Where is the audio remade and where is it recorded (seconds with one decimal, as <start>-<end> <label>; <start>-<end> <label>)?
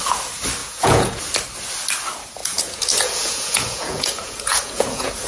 0.0-0.6 recorded; 0.6-1.2 remade; 1.2-2.4 recorded; 2.4-5.3 remade